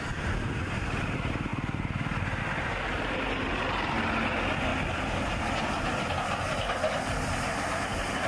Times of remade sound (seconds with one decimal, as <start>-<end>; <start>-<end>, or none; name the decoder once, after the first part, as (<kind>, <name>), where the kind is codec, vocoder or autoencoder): none